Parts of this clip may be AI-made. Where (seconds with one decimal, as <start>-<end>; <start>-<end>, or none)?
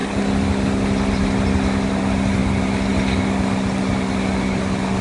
none